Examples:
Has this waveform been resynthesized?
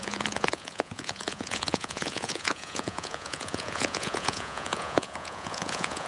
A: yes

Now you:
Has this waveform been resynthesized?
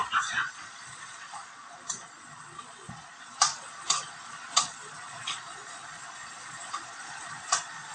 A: yes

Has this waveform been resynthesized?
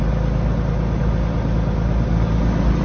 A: no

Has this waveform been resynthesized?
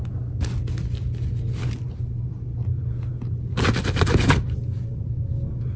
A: no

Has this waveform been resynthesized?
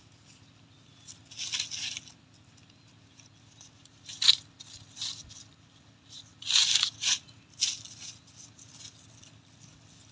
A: no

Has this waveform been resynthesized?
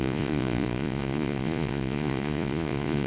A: yes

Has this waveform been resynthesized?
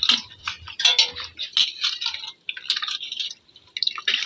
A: no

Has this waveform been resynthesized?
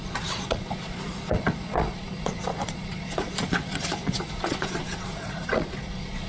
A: yes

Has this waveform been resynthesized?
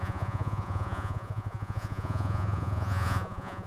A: yes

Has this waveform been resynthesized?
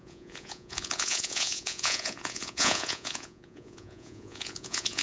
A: yes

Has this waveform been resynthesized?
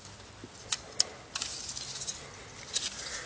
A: no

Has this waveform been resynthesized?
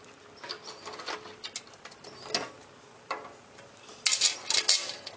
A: no